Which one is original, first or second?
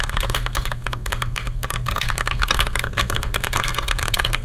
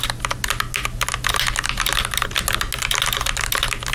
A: second